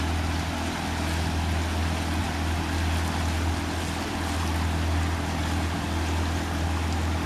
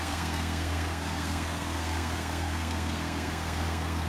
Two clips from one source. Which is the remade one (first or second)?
second